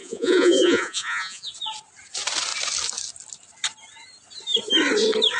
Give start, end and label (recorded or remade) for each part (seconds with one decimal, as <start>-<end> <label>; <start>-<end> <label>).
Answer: 0.0-1.5 remade; 1.5-5.4 recorded